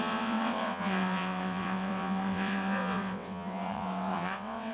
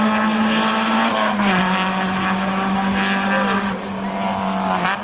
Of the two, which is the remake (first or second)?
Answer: first